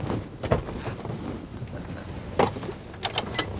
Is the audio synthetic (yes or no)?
no